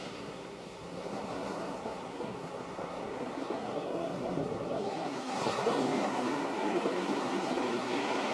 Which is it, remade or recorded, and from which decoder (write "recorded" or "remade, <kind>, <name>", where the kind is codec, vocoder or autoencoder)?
remade, codec, SNAC